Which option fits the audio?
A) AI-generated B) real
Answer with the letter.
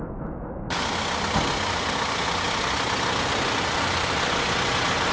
B